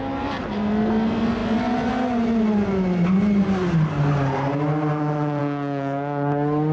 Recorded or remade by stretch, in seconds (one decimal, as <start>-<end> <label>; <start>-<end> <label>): 0.0-6.7 recorded